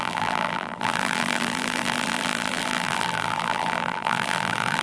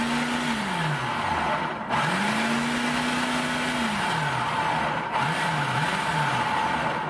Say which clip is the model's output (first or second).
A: first